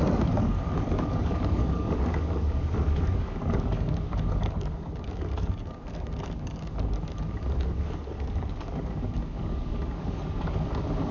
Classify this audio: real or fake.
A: fake